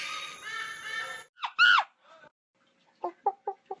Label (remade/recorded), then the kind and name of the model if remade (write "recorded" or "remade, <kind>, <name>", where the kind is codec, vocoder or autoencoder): recorded